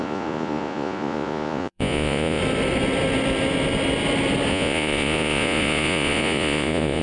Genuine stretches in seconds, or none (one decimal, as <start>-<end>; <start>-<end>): 2.4-4.5